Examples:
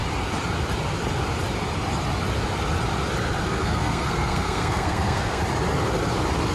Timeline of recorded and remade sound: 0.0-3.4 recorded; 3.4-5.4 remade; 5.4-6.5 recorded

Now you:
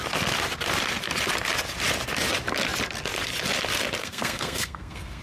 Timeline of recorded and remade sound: 0.0-4.0 recorded; 4.0-5.2 remade

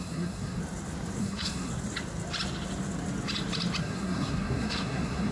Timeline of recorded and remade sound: 0.0-0.6 remade; 0.6-1.2 recorded; 1.2-1.7 remade; 1.7-3.8 recorded; 3.8-5.3 remade

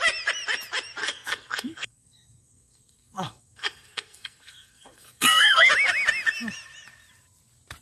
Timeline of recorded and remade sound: 0.0-1.0 recorded; 1.0-5.7 remade; 5.7-7.8 recorded